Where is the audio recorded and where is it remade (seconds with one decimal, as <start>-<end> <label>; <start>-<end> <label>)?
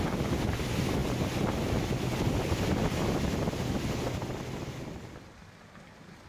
0.0-6.3 recorded